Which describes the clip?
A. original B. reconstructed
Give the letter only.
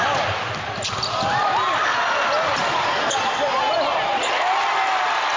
A